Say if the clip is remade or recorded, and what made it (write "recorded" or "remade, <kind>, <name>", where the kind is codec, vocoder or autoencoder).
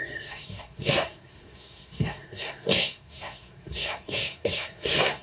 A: remade, codec, SNAC